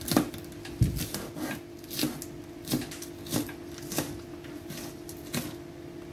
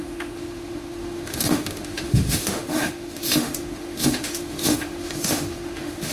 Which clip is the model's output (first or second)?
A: second